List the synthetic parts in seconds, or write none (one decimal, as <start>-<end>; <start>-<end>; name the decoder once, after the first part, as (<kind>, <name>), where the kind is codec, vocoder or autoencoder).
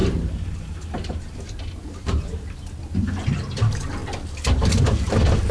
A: 0.0-3.1 (vocoder, BigVGAN v2)